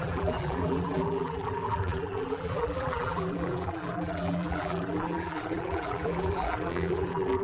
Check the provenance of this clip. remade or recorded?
remade